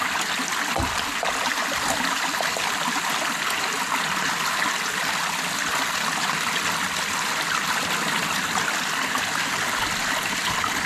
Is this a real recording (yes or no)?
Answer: yes